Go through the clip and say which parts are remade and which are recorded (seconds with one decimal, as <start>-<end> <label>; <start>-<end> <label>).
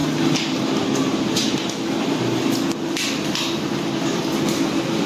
0.0-5.1 recorded